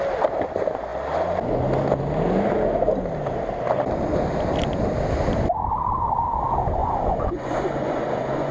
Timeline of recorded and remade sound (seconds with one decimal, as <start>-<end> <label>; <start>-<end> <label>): 0.0-6.8 recorded; 6.8-8.5 remade